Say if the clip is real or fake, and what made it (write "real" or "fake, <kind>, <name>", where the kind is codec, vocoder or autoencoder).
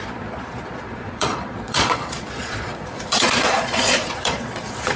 fake, vocoder, Vocos